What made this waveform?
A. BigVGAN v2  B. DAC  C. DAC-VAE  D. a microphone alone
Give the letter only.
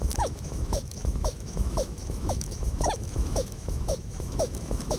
C